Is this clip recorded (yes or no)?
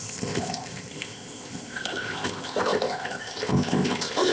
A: no